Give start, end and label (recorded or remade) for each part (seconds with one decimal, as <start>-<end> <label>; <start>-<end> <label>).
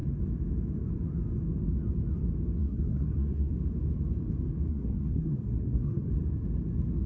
0.0-2.6 recorded; 2.6-3.5 remade; 3.5-4.7 recorded; 4.7-6.1 remade; 6.1-7.1 recorded